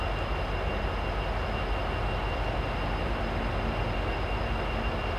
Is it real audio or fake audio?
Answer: real